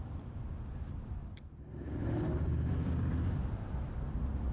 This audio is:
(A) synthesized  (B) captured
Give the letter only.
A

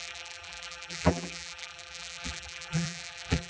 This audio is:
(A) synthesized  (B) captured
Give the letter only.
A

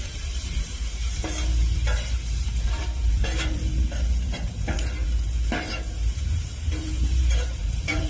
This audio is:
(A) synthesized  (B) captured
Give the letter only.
A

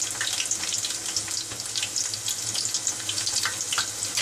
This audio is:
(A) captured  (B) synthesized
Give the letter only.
A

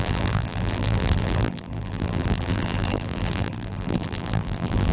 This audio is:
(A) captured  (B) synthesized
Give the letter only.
B